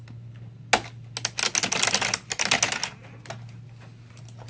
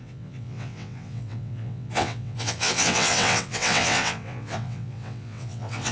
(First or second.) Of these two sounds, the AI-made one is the second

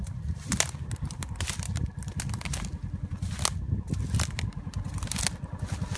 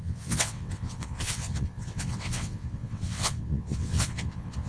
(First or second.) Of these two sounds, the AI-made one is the second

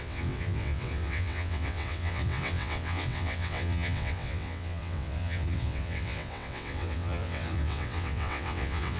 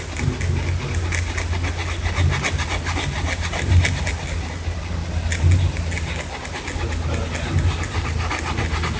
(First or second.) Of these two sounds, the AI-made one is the first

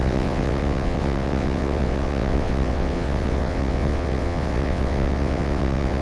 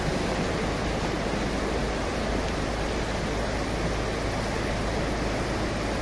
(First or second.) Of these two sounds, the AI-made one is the first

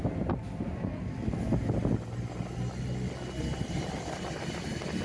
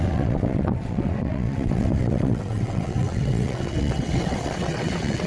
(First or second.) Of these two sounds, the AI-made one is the second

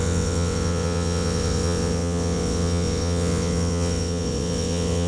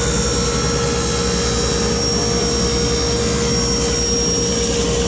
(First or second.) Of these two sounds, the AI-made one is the first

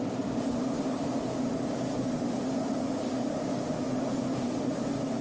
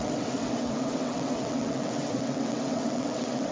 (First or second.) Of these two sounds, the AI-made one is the second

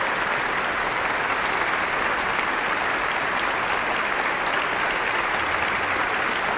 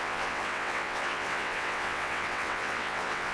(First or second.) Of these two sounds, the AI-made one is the second